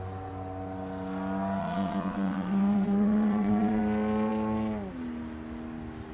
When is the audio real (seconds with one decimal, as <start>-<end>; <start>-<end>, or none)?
0.0-1.6; 3.8-6.1